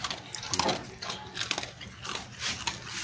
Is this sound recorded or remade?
recorded